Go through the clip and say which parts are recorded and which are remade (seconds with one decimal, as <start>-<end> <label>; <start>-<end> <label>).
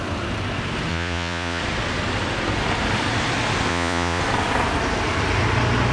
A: 0.0-0.9 recorded; 0.9-1.6 remade; 1.6-3.7 recorded; 3.7-4.2 remade; 4.2-5.9 recorded